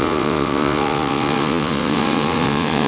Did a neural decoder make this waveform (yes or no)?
yes